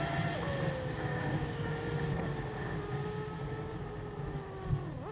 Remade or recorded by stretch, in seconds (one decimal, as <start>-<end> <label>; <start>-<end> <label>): 0.0-1.1 recorded; 1.1-1.7 remade; 1.7-5.1 recorded